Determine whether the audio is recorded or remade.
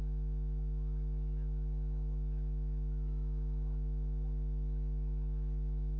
remade